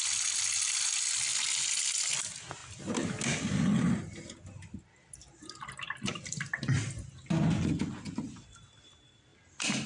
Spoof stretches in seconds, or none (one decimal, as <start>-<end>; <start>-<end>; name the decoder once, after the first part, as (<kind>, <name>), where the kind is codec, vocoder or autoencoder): none